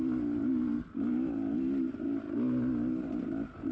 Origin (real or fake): real